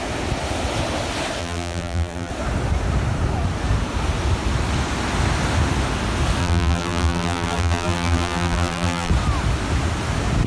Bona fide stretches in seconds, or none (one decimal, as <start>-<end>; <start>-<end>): 0.0-1.4; 2.3-6.4; 9.1-10.5